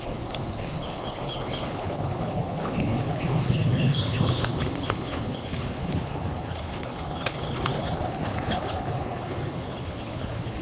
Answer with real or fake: fake